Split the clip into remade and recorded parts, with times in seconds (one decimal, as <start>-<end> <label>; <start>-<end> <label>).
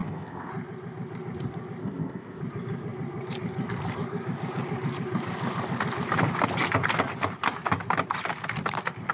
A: 0.0-0.5 remade; 0.5-1.8 recorded; 1.8-2.4 remade; 2.4-9.1 recorded